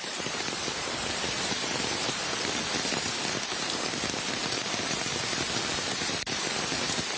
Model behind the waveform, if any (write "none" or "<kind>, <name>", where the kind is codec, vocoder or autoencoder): vocoder, BigVGAN v2